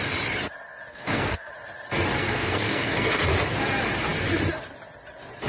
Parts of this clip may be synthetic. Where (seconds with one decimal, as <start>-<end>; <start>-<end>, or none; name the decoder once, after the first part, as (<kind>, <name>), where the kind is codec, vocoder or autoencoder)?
0.9-1.5 (codec, SNAC); 2.2-3.3